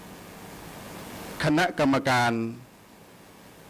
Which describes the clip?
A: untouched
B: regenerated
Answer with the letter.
A